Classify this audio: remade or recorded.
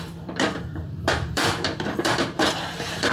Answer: remade